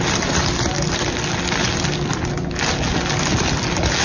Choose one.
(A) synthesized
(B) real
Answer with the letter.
B